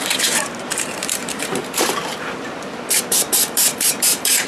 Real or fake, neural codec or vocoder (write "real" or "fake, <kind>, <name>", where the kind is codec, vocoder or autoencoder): fake, vocoder, BigVGAN v2